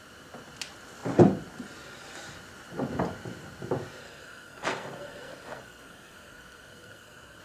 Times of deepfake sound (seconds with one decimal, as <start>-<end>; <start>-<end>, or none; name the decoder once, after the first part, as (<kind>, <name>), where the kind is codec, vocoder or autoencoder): 4.0-7.4 (codec, SNAC)